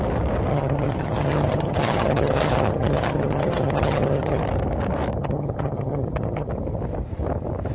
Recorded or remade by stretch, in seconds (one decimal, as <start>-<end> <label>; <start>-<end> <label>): 0.0-0.5 recorded; 0.5-4.4 remade; 4.4-5.2 recorded; 5.2-6.5 remade; 6.5-7.7 recorded